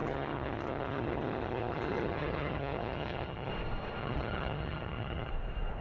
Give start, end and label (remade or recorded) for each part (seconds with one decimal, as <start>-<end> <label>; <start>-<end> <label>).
0.0-3.5 remade; 3.5-4.0 recorded; 4.0-5.3 remade; 5.3-5.8 recorded